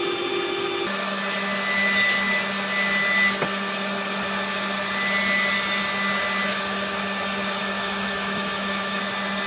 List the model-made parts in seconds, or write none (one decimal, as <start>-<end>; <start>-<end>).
7.6-9.0